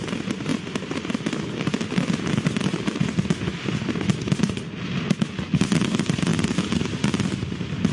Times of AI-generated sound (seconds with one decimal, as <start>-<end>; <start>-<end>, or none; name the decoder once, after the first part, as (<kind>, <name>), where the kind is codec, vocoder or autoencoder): none